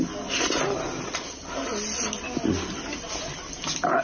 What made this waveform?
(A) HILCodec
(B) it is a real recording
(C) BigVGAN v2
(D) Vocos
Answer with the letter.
B